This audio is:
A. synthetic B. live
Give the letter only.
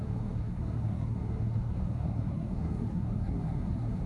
A